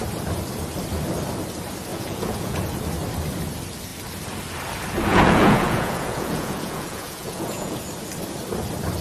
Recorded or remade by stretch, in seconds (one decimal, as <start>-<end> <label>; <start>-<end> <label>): 0.0-1.9 recorded; 1.9-2.6 remade; 2.6-5.1 recorded; 5.1-7.8 remade; 7.8-9.0 recorded